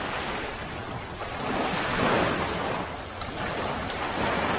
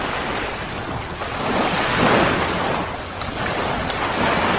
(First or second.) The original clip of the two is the second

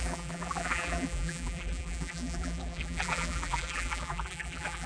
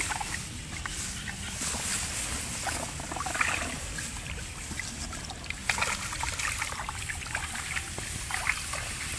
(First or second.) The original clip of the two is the second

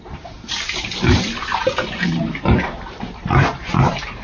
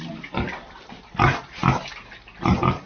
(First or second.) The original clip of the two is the second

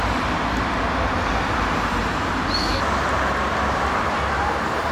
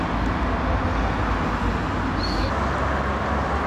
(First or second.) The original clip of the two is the second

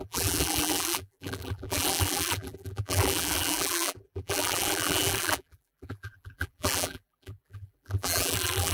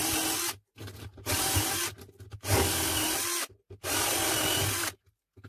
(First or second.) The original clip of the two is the second